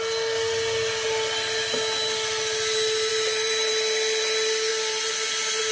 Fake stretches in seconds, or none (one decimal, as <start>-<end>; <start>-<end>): 3.1-3.7; 4.7-5.3